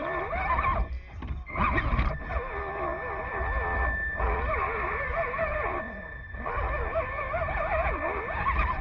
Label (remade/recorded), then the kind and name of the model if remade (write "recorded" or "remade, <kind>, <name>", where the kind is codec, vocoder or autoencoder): recorded